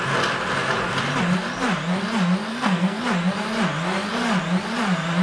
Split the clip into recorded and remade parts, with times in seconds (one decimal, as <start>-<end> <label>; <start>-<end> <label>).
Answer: 0.0-2.5 recorded; 2.5-3.0 remade; 3.0-5.2 recorded